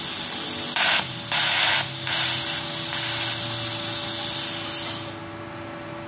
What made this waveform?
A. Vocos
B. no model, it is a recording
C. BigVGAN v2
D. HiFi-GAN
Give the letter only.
B